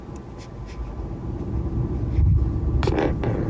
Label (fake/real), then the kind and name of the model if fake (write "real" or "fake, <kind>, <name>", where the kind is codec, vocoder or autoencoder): real